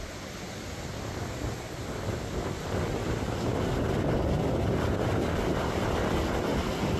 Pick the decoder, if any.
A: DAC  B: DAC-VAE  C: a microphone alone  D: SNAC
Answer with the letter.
C